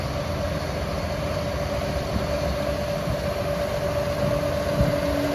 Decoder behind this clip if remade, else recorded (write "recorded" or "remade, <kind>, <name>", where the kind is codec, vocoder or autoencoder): recorded